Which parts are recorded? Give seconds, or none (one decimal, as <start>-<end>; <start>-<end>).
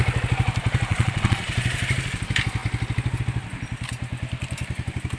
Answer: 0.0-0.9; 1.5-5.2